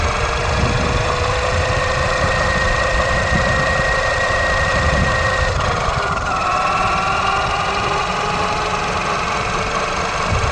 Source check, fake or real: real